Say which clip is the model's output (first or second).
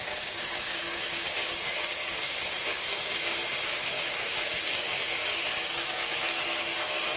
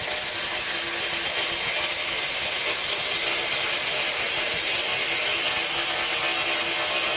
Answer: first